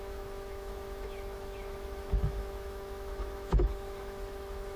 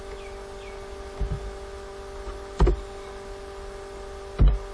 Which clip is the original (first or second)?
second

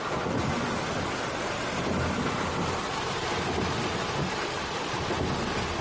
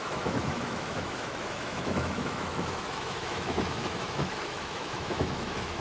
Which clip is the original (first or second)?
first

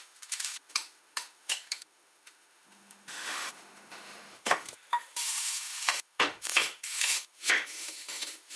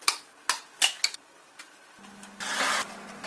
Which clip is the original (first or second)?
second